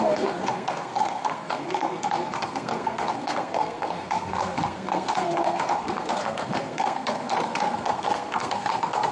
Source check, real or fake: fake